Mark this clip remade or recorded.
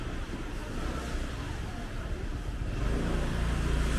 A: recorded